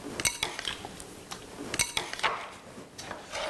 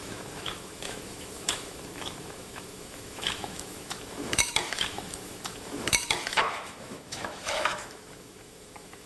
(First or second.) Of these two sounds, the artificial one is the second